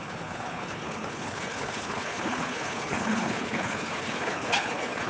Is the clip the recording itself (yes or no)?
no